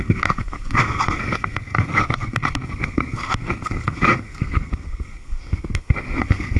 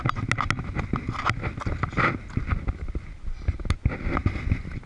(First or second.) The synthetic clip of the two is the first